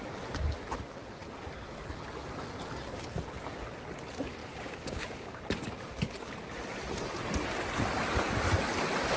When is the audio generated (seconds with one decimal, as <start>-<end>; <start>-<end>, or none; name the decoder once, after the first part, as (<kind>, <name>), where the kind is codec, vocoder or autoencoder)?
4.4-5.4 (codec, DAC)